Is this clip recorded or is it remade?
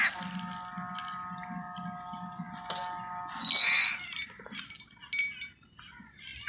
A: recorded